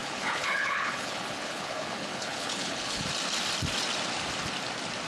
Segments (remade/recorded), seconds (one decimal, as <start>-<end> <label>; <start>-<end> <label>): 0.0-3.1 remade; 3.1-5.1 recorded